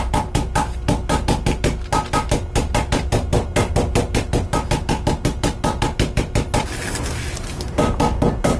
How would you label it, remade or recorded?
recorded